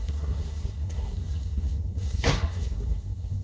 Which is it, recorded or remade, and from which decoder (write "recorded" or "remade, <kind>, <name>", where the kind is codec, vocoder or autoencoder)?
remade, codec, SNAC